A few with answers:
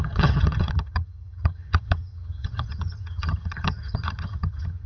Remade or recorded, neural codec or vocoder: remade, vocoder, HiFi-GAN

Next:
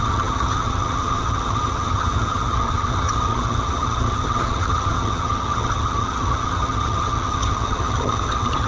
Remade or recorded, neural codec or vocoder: remade, vocoder, HiFi-GAN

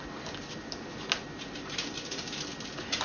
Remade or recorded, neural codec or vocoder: recorded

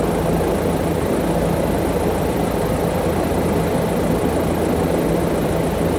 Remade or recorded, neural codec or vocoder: recorded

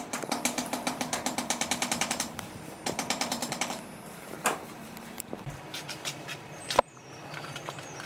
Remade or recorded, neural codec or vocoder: remade, vocoder, BigVGAN v2